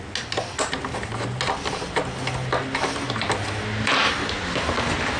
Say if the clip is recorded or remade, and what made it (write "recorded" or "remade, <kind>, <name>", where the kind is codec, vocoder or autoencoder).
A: recorded